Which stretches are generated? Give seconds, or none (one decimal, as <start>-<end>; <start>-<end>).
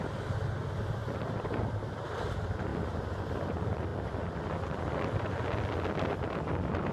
none